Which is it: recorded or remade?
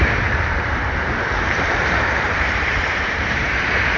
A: remade